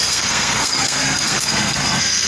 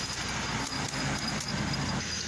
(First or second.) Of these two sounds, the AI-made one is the first